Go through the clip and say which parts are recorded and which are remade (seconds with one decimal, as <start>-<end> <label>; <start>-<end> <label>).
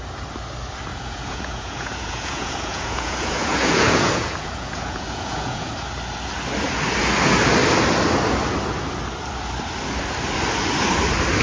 0.0-0.9 recorded; 0.9-5.7 remade; 5.7-11.4 recorded